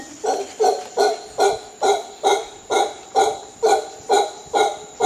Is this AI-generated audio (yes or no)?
no